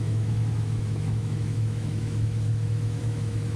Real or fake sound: fake